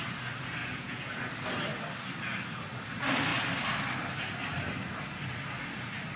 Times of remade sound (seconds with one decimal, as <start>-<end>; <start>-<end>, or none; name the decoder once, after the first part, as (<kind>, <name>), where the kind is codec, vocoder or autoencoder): 0.6-1.2 (vocoder, Vocos)